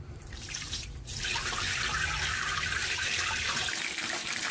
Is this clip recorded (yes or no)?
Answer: no